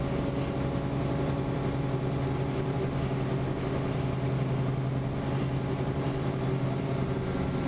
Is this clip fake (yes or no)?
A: no